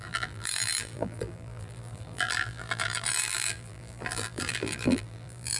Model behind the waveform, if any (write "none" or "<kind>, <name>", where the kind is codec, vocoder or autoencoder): vocoder, BigVGAN v2